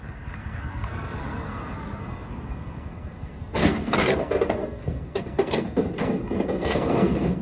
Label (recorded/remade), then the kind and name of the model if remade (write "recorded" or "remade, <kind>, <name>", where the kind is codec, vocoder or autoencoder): remade, codec, SNAC